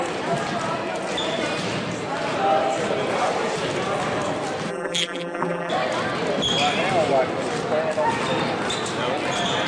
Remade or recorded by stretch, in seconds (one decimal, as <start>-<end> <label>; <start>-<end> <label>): 0.0-4.7 recorded; 4.7-5.7 remade; 5.7-9.7 recorded